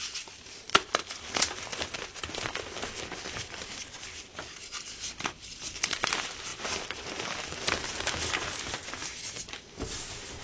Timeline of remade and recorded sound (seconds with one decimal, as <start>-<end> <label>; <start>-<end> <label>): 0.0-10.4 recorded